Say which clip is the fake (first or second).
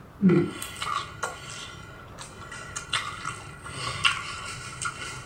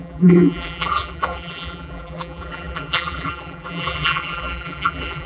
second